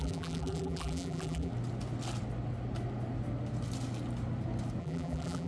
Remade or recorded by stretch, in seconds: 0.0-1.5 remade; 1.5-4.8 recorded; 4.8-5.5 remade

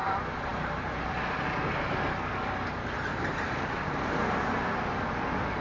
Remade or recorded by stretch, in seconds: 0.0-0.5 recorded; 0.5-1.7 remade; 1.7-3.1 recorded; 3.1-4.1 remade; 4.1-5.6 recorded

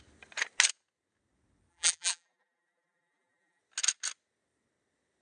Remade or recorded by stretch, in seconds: 0.0-1.7 recorded; 1.7-3.6 remade; 3.6-5.2 recorded

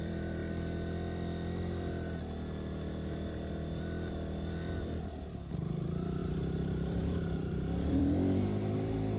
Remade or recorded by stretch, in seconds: 0.0-0.4 remade; 0.4-3.5 recorded; 3.5-9.2 remade

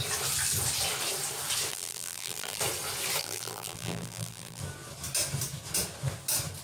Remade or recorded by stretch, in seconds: 0.0-1.7 recorded; 1.7-2.6 remade; 2.6-3.2 recorded; 3.2-4.6 remade; 4.6-6.6 recorded

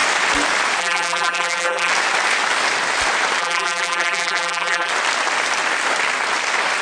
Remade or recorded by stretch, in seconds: 0.0-0.8 recorded; 0.8-1.9 remade; 1.9-3.4 recorded; 3.4-4.9 remade; 4.9-6.8 recorded

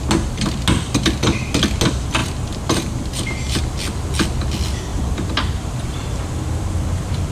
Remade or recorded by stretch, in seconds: 0.0-2.2 recorded; 2.2-3.6 remade; 3.6-4.9 recorded; 4.9-7.3 remade

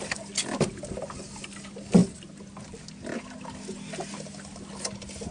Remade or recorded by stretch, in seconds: 0.0-5.3 recorded